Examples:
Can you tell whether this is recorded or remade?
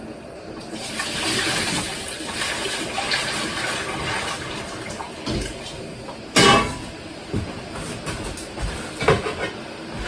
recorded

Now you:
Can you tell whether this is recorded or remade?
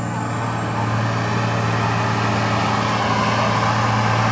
recorded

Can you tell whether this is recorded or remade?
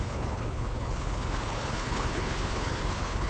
remade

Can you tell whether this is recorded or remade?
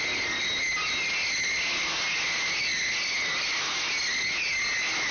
recorded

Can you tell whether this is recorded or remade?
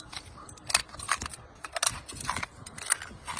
recorded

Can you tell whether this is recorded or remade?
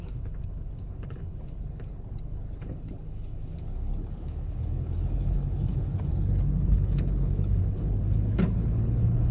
remade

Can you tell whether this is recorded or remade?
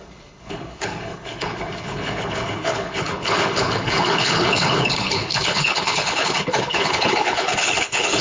remade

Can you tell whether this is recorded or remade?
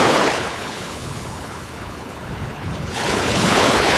remade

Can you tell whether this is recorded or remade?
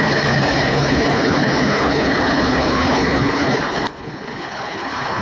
remade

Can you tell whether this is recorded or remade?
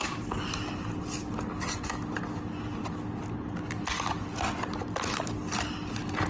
recorded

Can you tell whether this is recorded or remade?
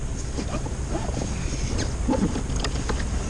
recorded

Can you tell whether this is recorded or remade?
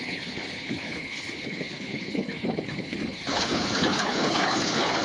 remade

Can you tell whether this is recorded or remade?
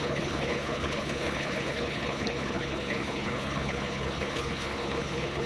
remade